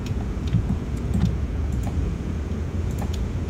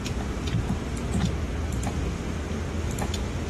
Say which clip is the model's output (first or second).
first